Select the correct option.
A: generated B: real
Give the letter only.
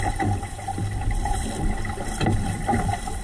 B